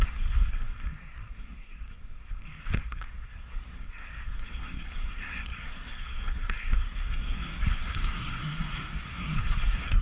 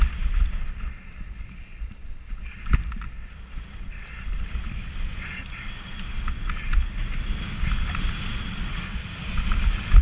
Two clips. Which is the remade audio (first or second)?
first